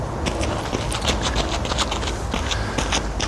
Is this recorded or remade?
recorded